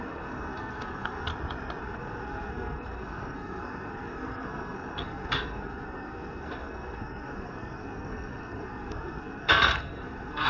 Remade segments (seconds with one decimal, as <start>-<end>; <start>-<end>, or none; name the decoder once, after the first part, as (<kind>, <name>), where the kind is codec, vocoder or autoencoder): 0.0-1.3 (codec, SNAC); 1.8-10.5